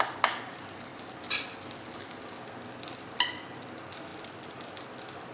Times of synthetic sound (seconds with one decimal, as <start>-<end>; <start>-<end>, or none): none